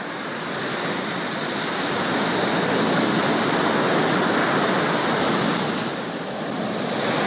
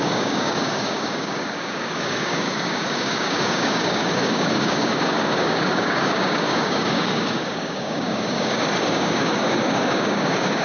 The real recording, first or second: first